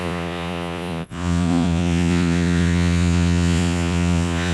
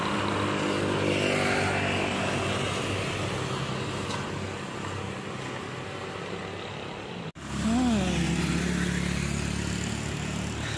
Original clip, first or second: second